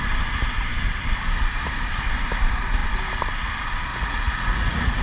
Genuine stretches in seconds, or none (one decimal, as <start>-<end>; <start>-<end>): 0.0-3.9